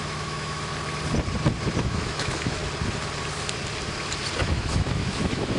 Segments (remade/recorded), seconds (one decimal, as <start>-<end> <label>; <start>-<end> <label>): 0.0-0.7 remade; 0.7-1.8 recorded; 1.8-2.6 remade; 2.6-4.4 recorded; 4.4-5.6 remade